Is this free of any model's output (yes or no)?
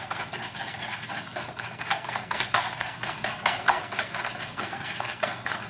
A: no